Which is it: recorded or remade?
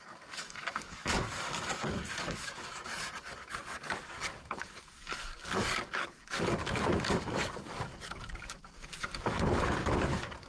remade